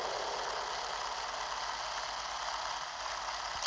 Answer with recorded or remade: recorded